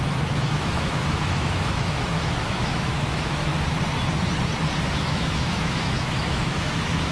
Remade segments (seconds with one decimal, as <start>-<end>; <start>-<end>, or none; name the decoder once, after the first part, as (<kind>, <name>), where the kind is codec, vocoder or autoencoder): 0.0-3.5 (autoencoder, DAC-VAE); 5.0-7.1